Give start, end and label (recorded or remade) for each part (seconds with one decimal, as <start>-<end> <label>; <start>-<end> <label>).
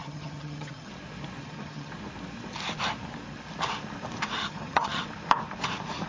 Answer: 0.0-0.9 remade; 0.9-1.4 recorded; 1.4-1.9 remade; 1.9-4.4 recorded; 4.4-5.0 remade; 5.0-6.1 recorded